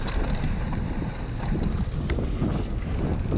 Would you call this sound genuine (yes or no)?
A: yes